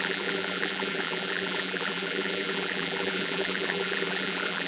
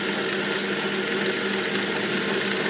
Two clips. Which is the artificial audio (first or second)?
first